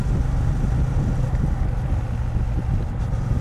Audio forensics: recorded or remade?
recorded